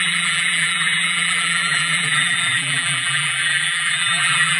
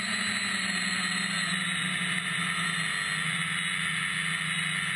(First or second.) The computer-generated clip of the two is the first